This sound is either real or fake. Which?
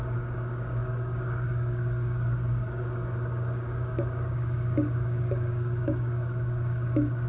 fake